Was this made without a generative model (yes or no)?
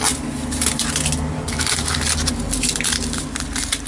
yes